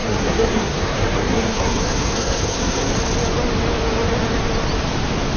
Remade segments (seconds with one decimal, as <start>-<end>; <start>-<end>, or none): 0.0-2.9